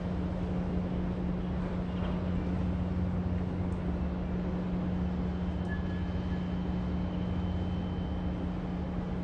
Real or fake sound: real